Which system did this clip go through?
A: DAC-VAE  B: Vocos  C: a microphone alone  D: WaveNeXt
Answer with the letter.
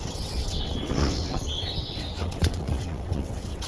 D